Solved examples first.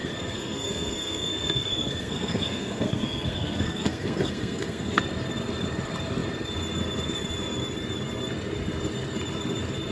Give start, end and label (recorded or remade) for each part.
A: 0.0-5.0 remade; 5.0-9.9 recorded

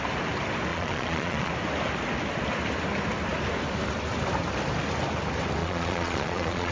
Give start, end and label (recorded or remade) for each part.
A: 0.0-0.7 recorded; 0.7-1.5 remade; 1.5-5.6 recorded; 5.6-6.7 remade

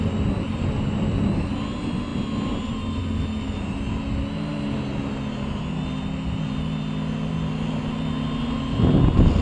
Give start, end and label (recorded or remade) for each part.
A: 0.0-9.4 recorded

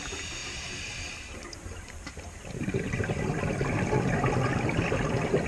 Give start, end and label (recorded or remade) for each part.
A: 0.0-0.4 recorded; 0.4-3.2 remade; 3.2-5.5 recorded

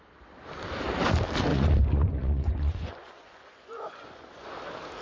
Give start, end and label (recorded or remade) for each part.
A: 0.0-1.5 recorded; 1.5-4.5 remade; 4.5-5.0 recorded

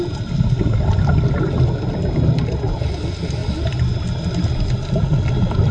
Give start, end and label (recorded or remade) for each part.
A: 0.0-5.7 recorded

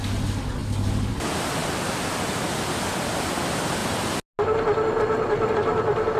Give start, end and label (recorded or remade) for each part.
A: 0.0-6.2 recorded